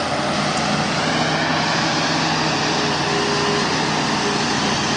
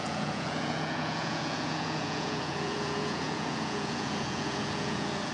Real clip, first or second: first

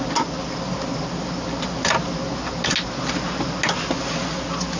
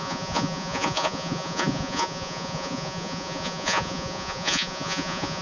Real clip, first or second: first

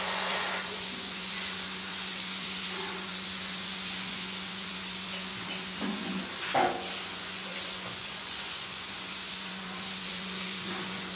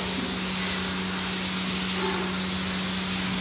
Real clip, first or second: second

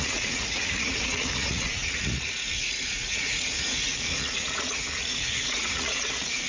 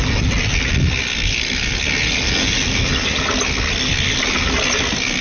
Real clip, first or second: second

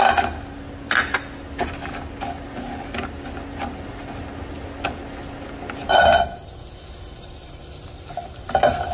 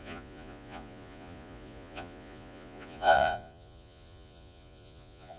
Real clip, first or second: first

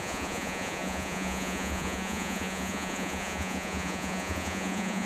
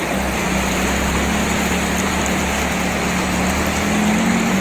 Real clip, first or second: second